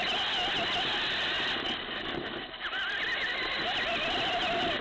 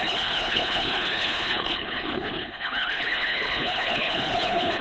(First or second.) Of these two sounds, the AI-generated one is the second